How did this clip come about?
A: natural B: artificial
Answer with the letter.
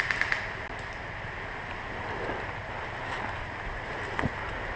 A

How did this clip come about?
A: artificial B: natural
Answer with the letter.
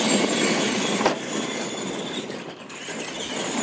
B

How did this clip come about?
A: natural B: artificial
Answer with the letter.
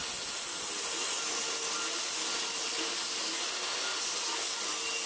A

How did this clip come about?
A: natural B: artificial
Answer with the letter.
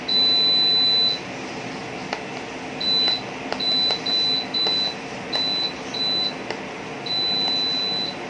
A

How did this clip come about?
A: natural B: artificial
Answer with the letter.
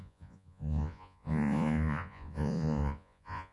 B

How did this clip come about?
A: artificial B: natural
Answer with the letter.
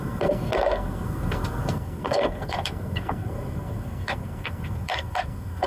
A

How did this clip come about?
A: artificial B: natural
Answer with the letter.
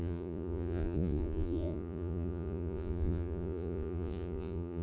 A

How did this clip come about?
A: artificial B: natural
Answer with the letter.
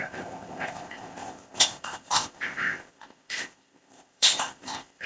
A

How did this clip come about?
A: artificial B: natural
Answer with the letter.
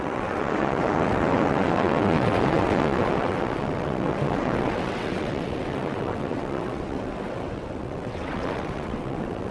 A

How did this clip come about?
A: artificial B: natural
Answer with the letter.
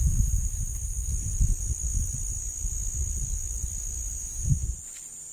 B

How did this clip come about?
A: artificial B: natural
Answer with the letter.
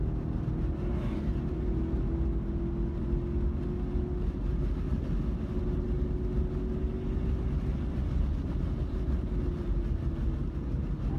B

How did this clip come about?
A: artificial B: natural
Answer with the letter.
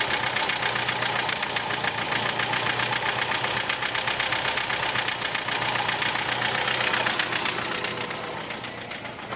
B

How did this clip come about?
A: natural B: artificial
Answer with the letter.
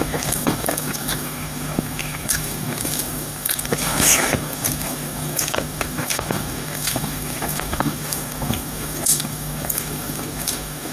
B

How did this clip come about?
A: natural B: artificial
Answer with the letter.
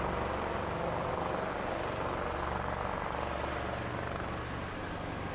A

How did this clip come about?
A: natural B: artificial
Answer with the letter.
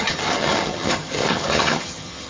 B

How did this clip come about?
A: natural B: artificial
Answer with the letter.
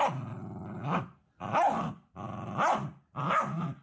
A